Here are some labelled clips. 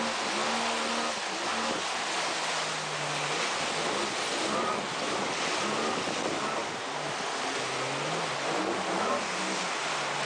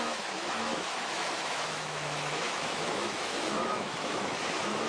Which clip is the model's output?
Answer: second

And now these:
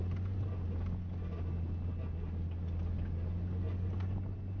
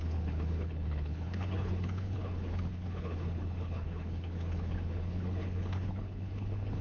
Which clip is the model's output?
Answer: second